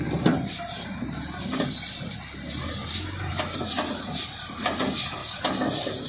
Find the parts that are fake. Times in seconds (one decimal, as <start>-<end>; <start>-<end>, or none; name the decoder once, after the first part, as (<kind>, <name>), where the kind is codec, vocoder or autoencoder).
none